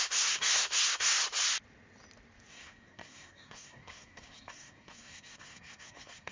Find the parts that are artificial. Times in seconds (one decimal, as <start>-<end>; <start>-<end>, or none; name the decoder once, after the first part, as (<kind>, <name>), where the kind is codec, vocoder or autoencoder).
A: 0.0-1.2 (codec, SNAC); 2.5-6.3